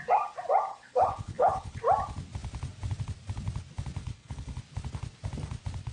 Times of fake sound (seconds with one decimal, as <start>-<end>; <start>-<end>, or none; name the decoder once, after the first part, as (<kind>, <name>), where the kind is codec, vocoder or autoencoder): 0.7-1.8 (codec, HILCodec); 4.0-4.6